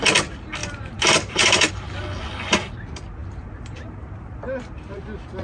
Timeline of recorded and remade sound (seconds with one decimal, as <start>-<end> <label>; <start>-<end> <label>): 0.0-0.6 recorded; 0.6-1.7 remade; 1.7-3.2 recorded; 3.2-5.0 remade; 5.0-5.4 recorded